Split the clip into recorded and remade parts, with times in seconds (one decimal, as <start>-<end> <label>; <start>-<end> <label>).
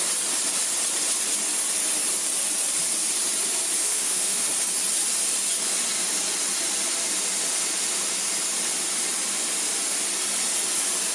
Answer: 0.0-3.8 recorded; 3.8-4.5 remade; 4.5-11.1 recorded